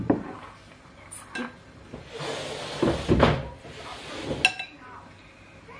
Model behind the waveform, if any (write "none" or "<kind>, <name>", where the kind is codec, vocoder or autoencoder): none